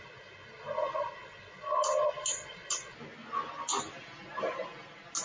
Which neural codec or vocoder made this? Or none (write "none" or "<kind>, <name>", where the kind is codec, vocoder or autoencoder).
none